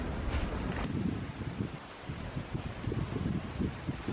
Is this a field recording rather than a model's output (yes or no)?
no